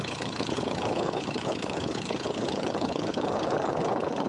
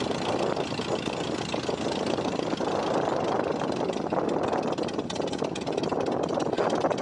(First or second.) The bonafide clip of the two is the second